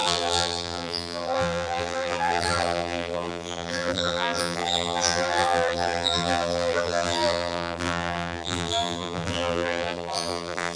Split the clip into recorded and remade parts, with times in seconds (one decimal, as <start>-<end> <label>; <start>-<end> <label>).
0.0-10.8 remade